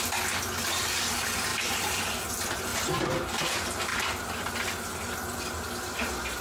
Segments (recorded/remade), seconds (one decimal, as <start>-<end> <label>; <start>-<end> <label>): 0.0-1.5 recorded; 1.5-2.3 remade; 2.3-6.4 recorded